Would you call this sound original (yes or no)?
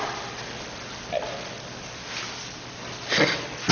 yes